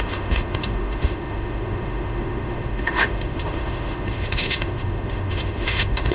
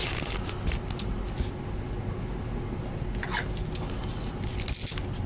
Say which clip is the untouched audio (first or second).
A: second